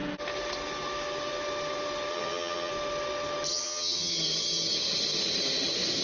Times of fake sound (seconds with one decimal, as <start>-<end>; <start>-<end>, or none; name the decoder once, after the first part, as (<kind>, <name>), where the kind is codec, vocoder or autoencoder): 2.1-2.7 (vocoder, HiFi-GAN); 3.5-4.1